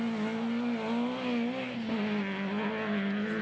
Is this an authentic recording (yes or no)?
yes